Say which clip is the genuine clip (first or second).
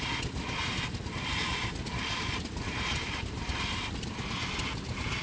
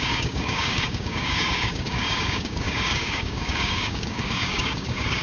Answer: first